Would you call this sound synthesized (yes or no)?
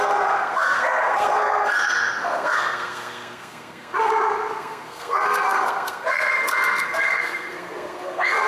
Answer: yes